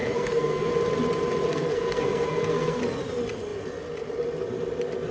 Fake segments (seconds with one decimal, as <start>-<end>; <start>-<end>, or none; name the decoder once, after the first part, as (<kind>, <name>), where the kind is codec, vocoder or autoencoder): 0.0-0.7 (codec, SNAC); 1.5-2.8